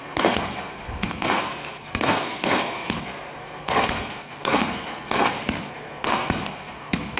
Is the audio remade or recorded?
remade